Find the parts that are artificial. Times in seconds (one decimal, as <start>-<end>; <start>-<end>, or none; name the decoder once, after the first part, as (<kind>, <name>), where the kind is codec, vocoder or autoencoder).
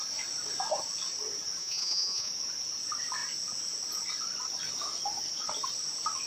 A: 1.6-2.3 (vocoder, Vocos)